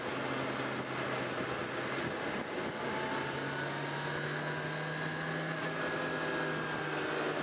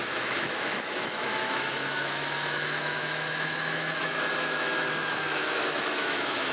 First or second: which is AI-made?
second